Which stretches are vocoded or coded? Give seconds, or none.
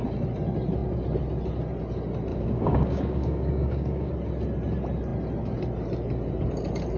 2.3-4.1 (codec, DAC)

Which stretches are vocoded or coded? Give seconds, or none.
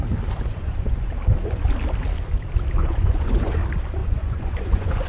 0.5-1.1 (vocoder, Vocos); 2.8-3.6; 4.0-5.1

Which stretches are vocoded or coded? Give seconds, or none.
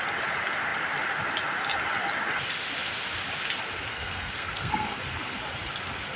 3.9-5.0 (codec, SNAC)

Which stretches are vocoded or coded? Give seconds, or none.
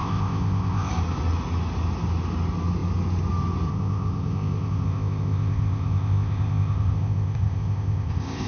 0.0-0.9 (codec, ZipCodec); 3.7-8.5